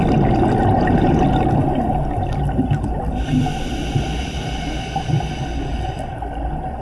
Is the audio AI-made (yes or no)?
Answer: no